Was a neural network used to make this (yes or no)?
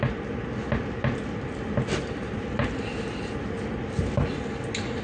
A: no